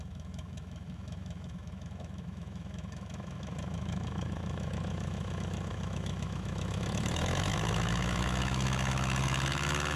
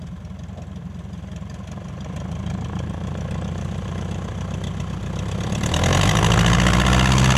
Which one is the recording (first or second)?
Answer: second